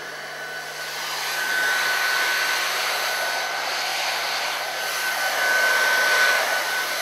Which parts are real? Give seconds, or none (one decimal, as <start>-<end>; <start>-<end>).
0.0-1.5; 2.3-7.0